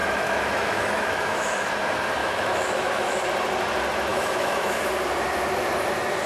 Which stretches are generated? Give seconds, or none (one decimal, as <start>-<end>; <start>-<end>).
0.0-1.7; 2.2-3.2; 4.1-4.8